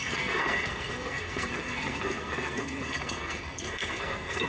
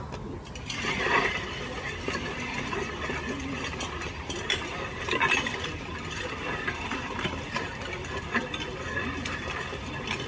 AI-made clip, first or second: first